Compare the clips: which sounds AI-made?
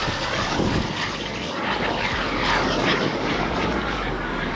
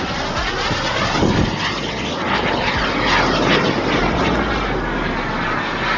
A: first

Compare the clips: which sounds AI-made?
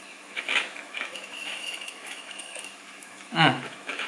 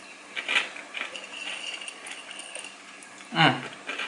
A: first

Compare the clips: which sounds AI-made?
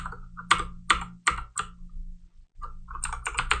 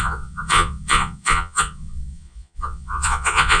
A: second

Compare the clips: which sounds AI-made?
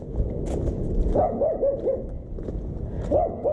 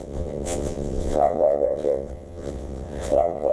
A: second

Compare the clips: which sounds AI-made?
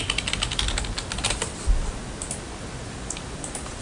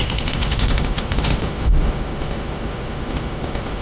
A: second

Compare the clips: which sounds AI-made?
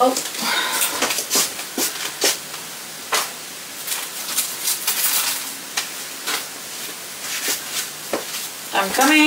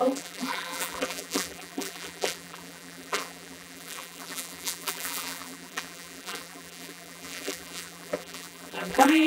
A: second